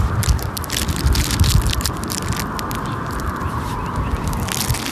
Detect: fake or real real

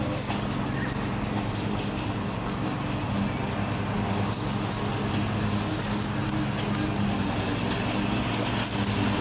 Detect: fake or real real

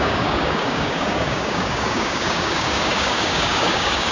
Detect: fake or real fake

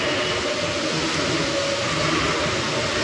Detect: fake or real real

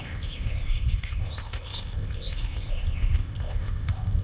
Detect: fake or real fake